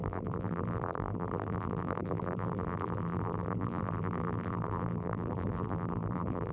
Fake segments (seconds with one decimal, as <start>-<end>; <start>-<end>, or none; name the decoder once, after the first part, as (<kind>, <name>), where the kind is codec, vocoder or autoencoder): 0.0-6.5 (vocoder, BigVGAN v2)